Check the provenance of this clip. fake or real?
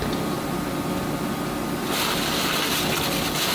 real